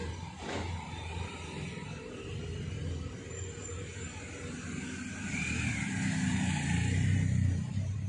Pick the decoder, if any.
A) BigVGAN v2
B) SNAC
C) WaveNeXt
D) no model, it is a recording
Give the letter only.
D